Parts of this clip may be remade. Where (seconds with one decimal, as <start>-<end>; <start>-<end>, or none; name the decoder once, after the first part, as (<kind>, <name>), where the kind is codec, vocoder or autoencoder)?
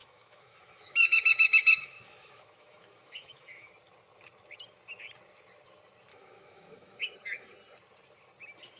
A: 0.0-3.7 (autoencoder, DAC-VAE); 6.1-7.1